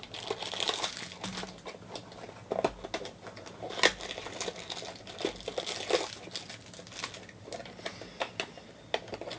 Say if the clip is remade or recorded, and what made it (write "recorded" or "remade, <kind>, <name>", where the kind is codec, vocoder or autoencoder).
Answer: recorded